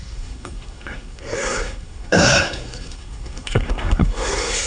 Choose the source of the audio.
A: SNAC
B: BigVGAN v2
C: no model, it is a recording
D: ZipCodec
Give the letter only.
A